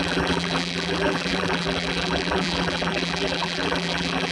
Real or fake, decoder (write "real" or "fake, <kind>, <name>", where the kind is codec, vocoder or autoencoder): fake, vocoder, BigVGAN v2